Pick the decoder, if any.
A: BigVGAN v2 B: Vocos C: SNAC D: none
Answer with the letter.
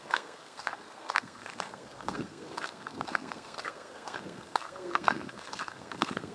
C